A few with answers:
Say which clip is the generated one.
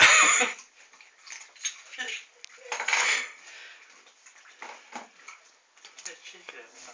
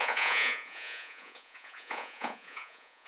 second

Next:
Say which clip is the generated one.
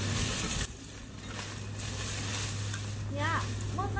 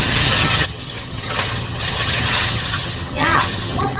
second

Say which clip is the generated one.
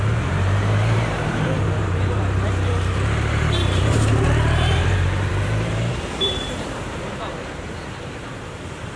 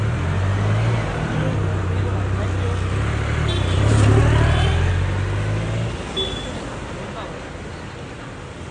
first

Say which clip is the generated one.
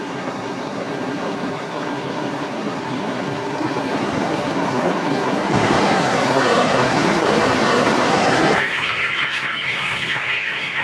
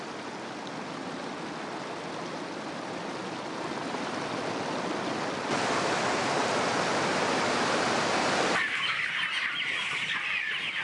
first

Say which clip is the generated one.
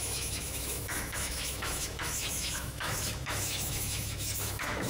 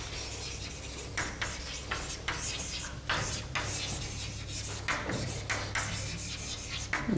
first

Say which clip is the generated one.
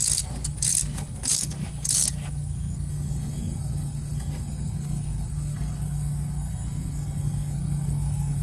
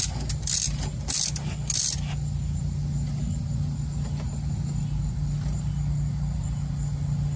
first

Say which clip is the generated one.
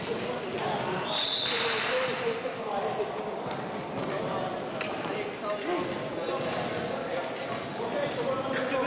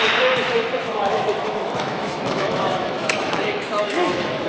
second